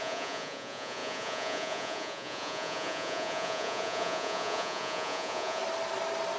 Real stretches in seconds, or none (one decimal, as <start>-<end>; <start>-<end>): 5.6-6.4